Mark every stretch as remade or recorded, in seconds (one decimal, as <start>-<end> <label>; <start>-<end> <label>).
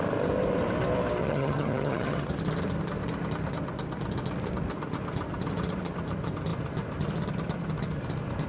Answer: 0.0-1.2 recorded; 1.2-2.3 remade; 2.3-8.5 recorded